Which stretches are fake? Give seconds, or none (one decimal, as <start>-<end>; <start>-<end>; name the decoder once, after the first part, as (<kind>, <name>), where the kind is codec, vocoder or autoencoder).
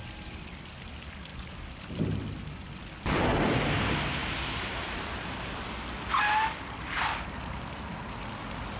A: 4.2-5.4 (vocoder, BigVGAN v2)